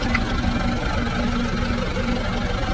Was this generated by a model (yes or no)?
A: no